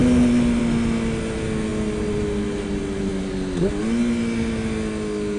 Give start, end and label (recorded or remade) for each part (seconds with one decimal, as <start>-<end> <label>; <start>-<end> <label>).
0.0-5.4 recorded